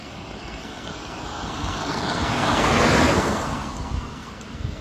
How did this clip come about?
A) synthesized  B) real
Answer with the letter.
A